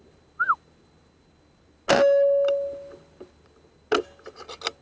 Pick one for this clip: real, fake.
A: real